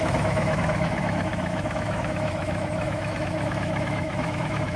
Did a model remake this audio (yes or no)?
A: yes